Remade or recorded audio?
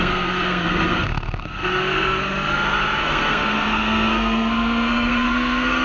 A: remade